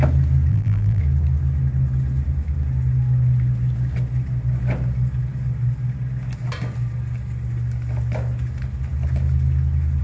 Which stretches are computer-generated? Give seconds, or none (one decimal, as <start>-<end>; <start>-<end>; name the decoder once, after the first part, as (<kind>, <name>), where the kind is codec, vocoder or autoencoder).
0.5-1.0 (vocoder, BigVGAN v2)